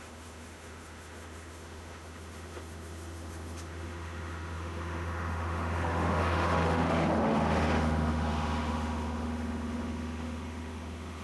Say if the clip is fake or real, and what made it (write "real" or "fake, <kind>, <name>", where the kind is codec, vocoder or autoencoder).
fake, autoencoder, DAC-VAE